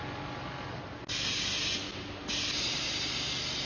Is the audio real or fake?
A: real